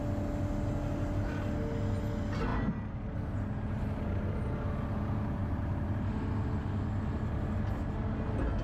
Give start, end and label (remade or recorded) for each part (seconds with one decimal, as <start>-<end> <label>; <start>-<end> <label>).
0.0-8.6 recorded